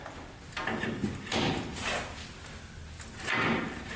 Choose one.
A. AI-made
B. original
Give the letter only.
B